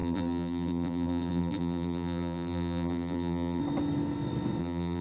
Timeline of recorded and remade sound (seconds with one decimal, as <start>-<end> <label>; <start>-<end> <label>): 0.0-3.6 remade; 3.6-4.6 recorded; 4.6-5.0 remade